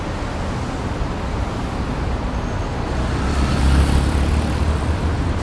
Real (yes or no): yes